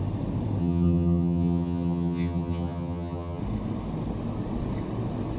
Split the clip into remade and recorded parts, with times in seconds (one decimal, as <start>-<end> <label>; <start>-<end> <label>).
0.0-0.6 recorded; 0.6-3.4 remade; 3.4-5.4 recorded